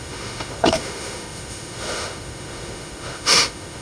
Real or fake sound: fake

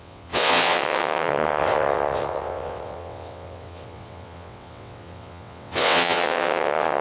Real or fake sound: fake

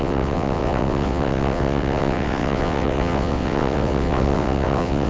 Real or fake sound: fake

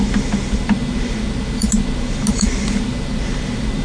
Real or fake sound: real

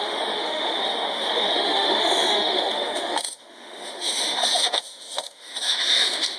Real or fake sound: fake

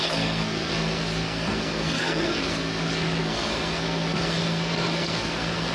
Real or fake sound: fake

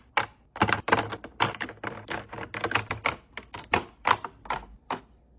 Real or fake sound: real